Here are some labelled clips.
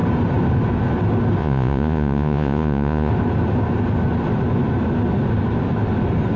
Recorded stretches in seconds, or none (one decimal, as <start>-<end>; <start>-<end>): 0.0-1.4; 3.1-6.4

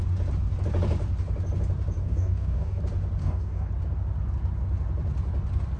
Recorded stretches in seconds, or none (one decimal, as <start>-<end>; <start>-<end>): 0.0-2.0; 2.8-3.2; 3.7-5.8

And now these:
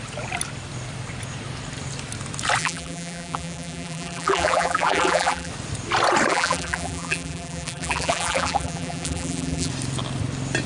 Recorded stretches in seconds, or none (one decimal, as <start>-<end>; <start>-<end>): 0.0-2.6; 5.5-6.3; 9.7-10.7

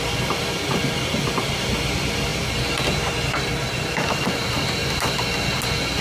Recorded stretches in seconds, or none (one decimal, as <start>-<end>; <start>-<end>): 0.0-6.0

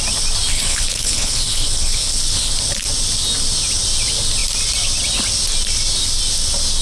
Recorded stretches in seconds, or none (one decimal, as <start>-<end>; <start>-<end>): 0.0-0.5; 2.5-6.8